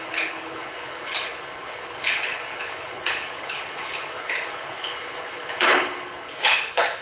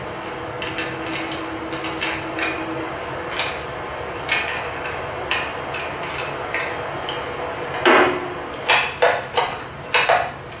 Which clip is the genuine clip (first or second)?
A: second